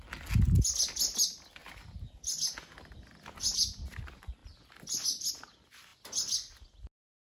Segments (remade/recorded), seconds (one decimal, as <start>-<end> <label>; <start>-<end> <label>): 0.0-7.3 recorded